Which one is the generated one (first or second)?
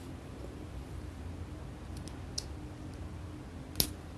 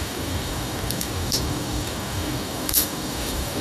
second